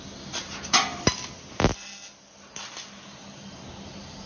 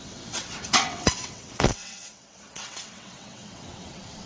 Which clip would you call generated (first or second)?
second